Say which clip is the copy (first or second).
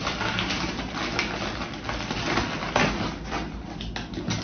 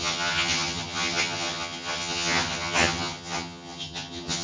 second